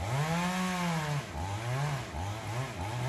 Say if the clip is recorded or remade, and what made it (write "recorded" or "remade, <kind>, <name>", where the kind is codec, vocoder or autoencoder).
recorded